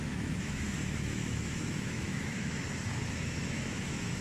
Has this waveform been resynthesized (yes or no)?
yes